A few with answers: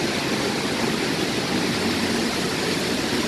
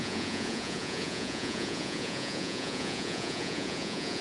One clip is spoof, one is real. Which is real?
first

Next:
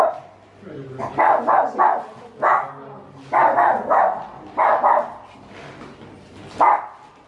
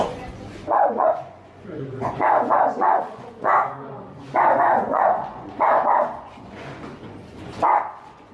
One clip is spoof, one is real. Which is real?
first